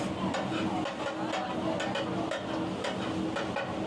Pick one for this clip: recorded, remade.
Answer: recorded